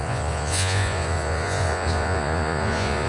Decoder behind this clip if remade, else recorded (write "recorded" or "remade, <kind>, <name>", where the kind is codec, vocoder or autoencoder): remade, vocoder, Vocos